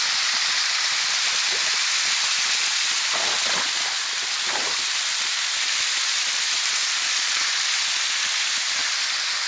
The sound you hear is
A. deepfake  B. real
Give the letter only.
B